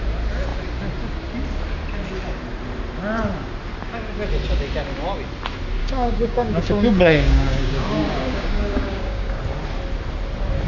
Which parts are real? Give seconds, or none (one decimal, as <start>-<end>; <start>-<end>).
0.0-5.8; 9.4-10.7